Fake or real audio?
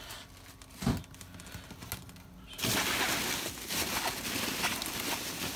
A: real